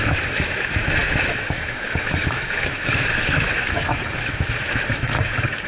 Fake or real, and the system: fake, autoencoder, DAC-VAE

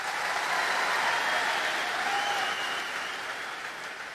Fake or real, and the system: real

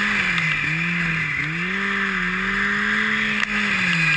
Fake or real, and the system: real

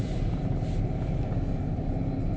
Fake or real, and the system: fake, vocoder, BigVGAN v2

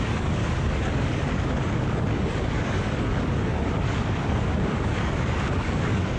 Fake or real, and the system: fake, codec, DAC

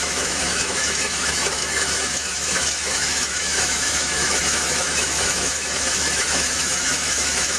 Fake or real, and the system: fake, autoencoder, DAC-VAE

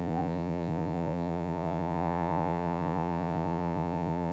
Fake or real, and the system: fake, vocoder, Vocos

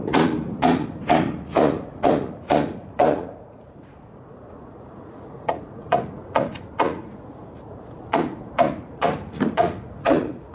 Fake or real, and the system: fake, vocoder, Vocos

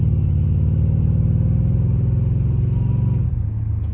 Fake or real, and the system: real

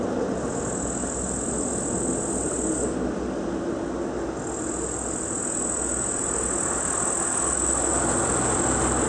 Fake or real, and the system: real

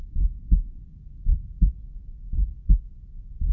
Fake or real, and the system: real